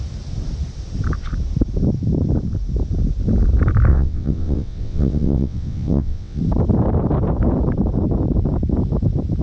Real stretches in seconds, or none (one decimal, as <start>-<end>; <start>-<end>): 0.0-3.9; 6.4-9.4